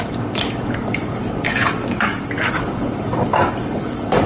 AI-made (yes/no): yes